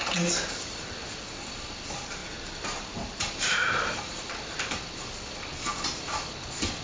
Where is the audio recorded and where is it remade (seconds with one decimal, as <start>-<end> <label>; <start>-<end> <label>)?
0.0-2.2 recorded; 2.2-4.3 remade; 4.3-6.8 recorded